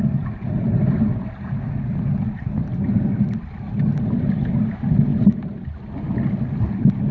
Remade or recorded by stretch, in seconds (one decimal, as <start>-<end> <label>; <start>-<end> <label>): 0.0-7.1 recorded